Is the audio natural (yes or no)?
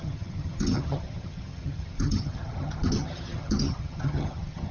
no